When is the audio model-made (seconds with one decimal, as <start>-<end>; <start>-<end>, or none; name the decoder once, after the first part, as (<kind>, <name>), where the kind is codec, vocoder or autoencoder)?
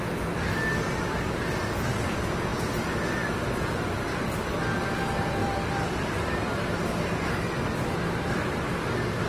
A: 5.4-6.6 (vocoder, BigVGAN v2)